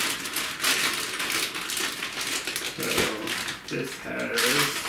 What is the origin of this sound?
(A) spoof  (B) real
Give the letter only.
B